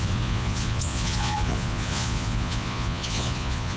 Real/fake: fake